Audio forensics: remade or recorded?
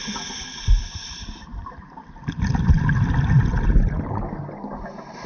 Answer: recorded